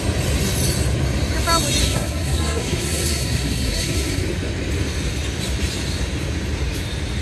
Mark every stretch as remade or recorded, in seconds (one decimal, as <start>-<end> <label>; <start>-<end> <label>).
0.0-1.8 recorded; 1.8-4.2 remade; 4.2-7.2 recorded